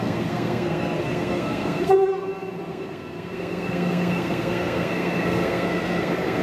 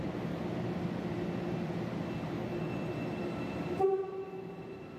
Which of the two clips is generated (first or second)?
first